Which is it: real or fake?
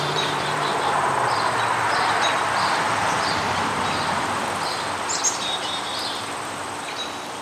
fake